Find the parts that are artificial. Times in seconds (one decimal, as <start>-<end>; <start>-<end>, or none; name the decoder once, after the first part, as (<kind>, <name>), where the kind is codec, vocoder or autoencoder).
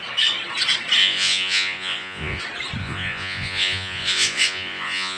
1.0-2.4 (vocoder, Vocos); 2.8-5.2